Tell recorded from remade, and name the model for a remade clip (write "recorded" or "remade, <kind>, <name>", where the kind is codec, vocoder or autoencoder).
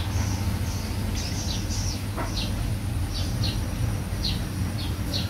recorded